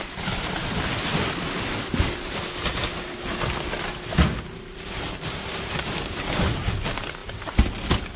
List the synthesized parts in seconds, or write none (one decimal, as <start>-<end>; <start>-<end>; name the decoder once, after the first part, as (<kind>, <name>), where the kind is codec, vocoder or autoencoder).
none